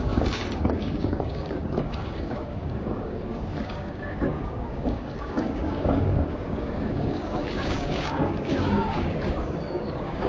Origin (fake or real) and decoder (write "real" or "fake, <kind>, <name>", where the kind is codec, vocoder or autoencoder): fake, codec, DAC